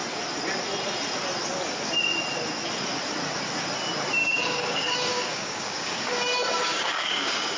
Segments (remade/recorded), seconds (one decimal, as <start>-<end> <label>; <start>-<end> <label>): 0.0-4.2 recorded; 4.2-7.6 remade